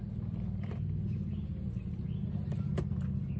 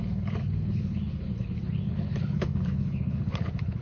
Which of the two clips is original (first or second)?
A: first